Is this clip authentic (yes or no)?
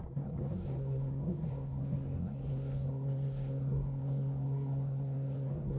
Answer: no